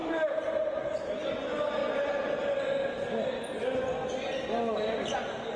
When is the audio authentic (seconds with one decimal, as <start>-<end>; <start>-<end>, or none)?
0.0-5.6